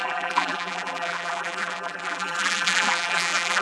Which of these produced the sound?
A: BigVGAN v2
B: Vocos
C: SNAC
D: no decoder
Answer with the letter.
A